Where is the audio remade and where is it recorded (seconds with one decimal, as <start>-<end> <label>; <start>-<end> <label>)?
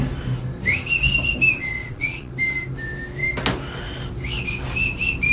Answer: 0.0-1.6 recorded; 1.6-2.3 remade; 2.3-5.3 recorded